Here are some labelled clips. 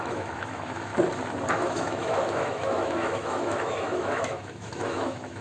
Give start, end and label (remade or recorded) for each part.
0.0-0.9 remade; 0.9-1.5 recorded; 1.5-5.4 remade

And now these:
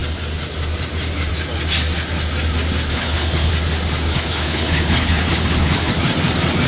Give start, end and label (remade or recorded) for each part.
0.0-2.9 recorded; 2.9-3.5 remade; 3.5-4.1 recorded; 4.1-5.9 remade; 5.9-6.7 recorded

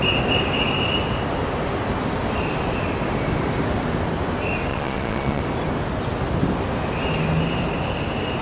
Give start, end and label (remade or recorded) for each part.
0.0-4.7 recorded; 4.7-5.4 remade; 5.4-8.4 recorded

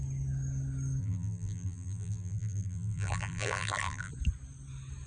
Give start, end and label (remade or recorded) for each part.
0.0-1.0 recorded; 1.0-4.1 remade; 4.1-5.1 recorded

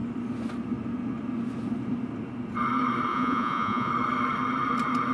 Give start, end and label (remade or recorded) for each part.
0.0-3.1 recorded; 3.1-3.9 remade; 3.9-5.1 recorded